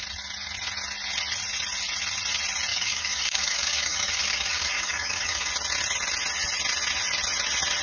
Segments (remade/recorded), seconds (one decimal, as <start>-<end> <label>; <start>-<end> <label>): 0.0-2.7 recorded; 2.7-5.5 remade; 5.5-7.8 recorded